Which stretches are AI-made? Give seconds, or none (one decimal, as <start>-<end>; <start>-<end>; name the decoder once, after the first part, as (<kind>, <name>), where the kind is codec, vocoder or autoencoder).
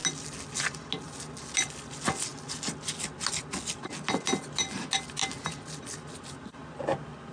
none